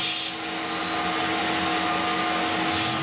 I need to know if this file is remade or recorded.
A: recorded